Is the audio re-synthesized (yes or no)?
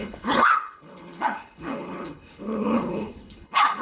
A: yes